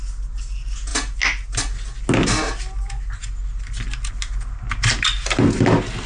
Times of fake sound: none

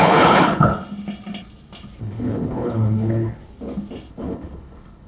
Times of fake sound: 0.0-0.7 (codec, HILCodec); 2.0-3.4; 4.1-5.1

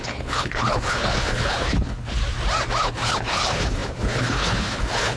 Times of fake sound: 0.0-2.2 (codec, HILCodec); 2.8-5.2

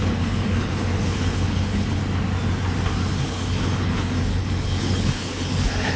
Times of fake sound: 0.0-2.0 (codec, HILCodec); 3.2-6.0

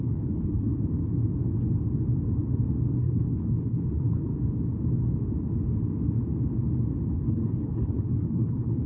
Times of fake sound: 0.0-0.7 (codec, HILCodec); 3.0-4.3; 7.1-8.9

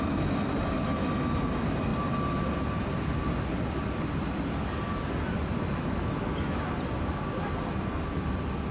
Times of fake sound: none